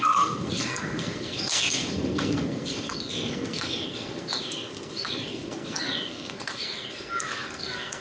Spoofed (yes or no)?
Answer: yes